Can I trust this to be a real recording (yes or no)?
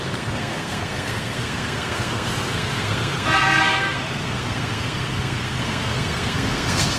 no